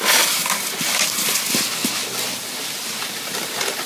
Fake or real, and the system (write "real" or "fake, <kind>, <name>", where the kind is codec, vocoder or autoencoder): real